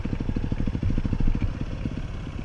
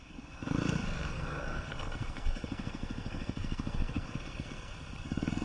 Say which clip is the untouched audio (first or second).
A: first